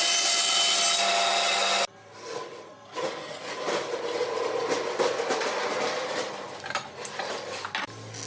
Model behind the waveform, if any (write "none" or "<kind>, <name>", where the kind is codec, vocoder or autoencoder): none